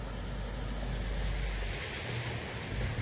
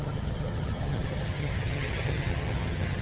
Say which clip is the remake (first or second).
second